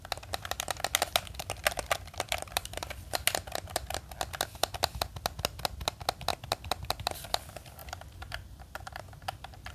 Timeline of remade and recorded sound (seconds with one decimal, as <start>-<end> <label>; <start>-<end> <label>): 0.0-1.6 recorded; 1.6-2.6 remade; 2.6-6.3 recorded; 6.3-7.0 remade; 7.0-7.8 recorded; 7.8-8.9 remade; 8.9-9.7 recorded